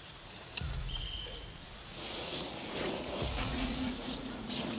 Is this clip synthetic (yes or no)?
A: yes